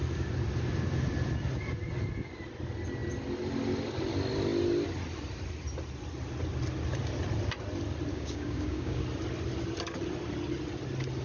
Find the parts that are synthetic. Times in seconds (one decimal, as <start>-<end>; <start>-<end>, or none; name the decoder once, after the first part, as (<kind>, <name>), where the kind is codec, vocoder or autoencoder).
8.1-9.0 (codec, DAC)